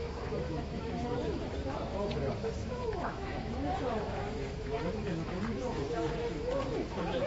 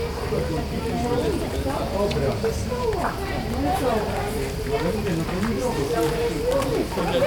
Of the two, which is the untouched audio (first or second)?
second